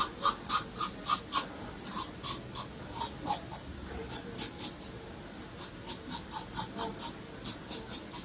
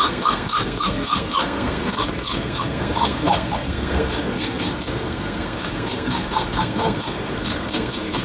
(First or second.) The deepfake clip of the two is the second